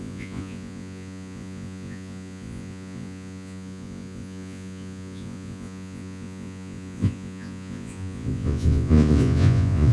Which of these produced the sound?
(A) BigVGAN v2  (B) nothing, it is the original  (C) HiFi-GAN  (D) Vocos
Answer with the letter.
D